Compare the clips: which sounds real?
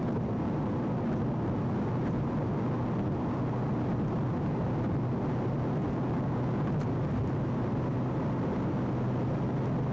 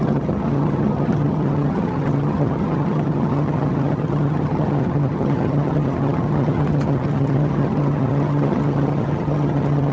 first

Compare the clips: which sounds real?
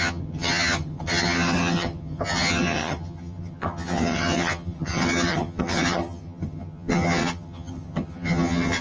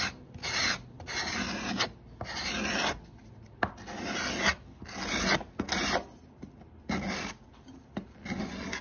second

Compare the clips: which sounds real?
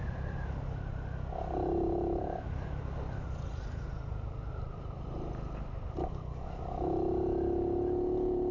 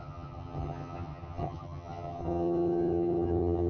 first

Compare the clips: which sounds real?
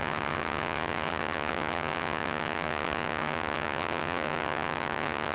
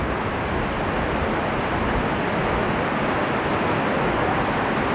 second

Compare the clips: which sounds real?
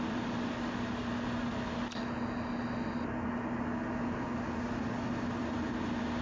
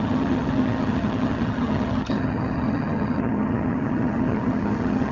first